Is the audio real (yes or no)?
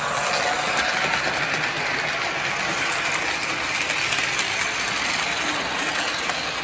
yes